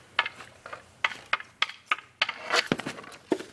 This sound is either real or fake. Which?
real